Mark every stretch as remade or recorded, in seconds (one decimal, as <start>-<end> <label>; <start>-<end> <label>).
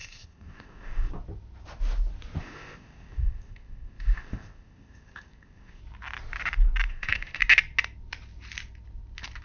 0.0-1.1 remade; 1.1-2.4 recorded; 2.4-5.8 remade; 5.8-6.9 recorded; 6.9-7.4 remade; 7.4-9.4 recorded